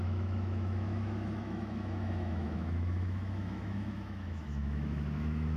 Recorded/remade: remade